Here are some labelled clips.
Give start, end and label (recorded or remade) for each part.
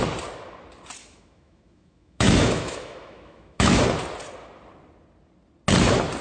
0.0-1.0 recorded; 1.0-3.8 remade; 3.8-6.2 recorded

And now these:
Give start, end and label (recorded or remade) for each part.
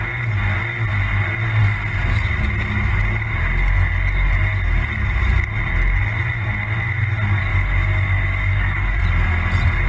0.0-7.5 recorded; 7.5-9.0 remade; 9.0-9.9 recorded